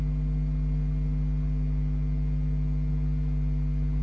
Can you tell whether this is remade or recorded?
recorded